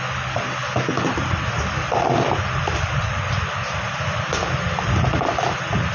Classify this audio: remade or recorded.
recorded